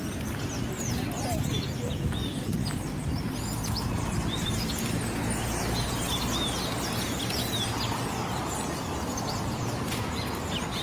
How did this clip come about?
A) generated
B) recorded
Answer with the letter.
B